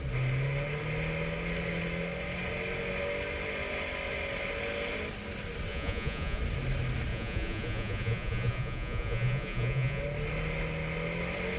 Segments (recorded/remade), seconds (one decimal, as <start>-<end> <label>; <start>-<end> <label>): 0.0-5.7 recorded; 5.7-6.4 remade; 6.4-7.1 recorded; 7.1-10.0 remade; 10.0-11.6 recorded

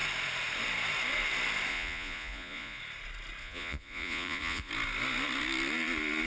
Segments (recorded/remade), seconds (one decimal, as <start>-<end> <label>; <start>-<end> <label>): 0.0-1.7 recorded; 1.7-2.8 remade; 2.8-3.4 recorded; 3.4-4.7 remade; 4.7-6.3 recorded

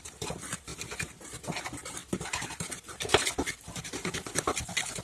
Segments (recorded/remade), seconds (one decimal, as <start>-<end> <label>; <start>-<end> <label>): 0.0-0.7 remade; 0.7-1.4 recorded; 1.4-5.0 remade

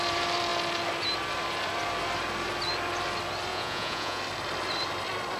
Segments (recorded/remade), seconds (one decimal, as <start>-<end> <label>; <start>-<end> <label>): 0.0-3.5 recorded; 3.5-4.2 remade; 4.2-5.4 recorded